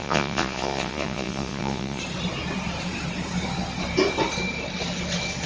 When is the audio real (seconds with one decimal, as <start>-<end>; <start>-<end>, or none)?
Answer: 2.0-5.5